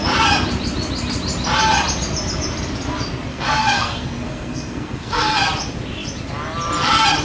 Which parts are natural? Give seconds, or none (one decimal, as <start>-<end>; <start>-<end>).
0.0-3.3; 5.3-7.2